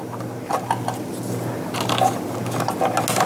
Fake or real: real